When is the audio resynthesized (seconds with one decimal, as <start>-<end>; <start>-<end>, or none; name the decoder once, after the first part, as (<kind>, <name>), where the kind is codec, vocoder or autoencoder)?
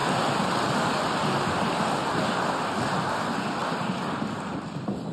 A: none